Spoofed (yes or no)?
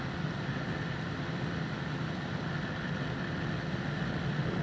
no